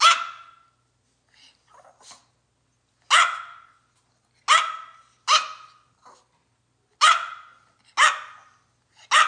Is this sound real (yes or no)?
yes